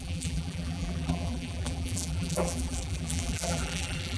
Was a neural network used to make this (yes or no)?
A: yes